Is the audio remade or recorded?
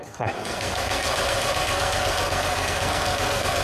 remade